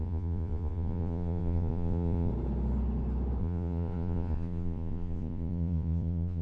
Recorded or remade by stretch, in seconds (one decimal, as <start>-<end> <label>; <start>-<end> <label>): 0.0-2.3 remade; 2.3-3.4 recorded; 3.4-6.4 remade